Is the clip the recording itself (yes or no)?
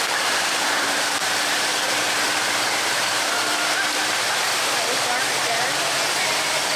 no